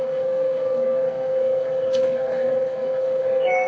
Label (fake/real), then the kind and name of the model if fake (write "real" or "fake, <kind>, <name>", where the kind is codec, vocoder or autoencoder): fake, codec, SNAC